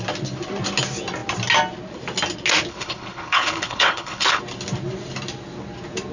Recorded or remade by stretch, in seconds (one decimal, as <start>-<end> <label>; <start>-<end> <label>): 0.0-2.7 recorded; 2.7-4.4 remade; 4.4-6.1 recorded